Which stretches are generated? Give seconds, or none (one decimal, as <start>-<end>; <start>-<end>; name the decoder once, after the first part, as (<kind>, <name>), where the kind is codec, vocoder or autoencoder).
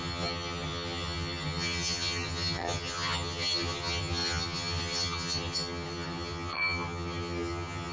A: 0.0-7.9 (vocoder, HiFi-GAN)